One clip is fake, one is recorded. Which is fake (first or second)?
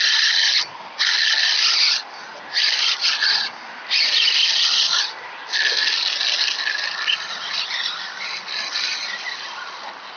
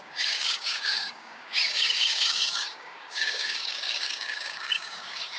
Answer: second